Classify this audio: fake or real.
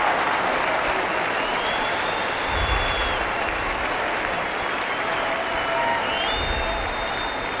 real